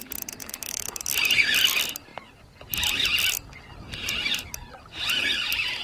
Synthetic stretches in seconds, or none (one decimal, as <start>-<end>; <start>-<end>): 0.4-1.0

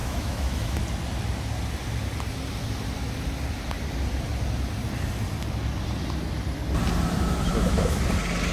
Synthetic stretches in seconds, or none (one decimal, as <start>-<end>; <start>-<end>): 0.0-0.8; 7.5-8.0

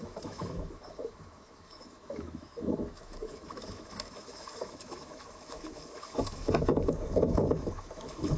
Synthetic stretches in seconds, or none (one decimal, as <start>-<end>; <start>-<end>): 0.0-8.4

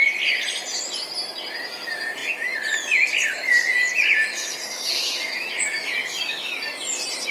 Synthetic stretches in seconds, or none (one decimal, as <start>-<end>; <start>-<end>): 4.2-6.5